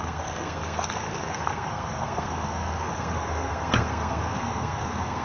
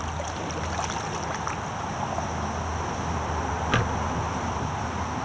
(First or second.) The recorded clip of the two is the second